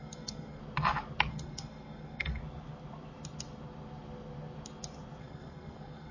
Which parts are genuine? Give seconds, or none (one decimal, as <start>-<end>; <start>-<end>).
0.6-1.3; 2.4-5.2